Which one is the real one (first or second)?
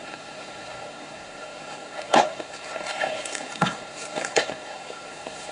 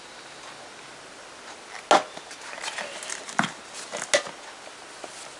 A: second